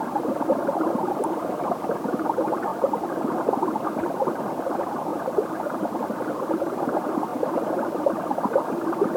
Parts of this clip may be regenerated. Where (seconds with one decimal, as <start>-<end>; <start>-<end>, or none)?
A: none